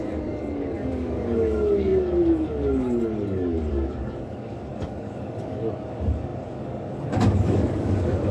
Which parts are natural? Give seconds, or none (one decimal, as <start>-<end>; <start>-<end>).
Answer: none